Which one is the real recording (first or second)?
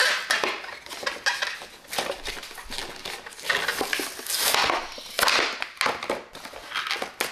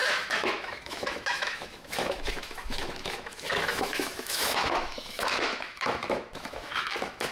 first